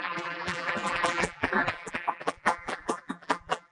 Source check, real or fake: fake